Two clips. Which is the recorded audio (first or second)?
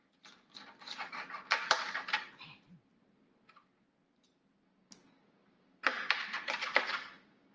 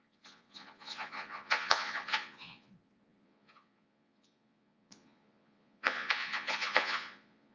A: first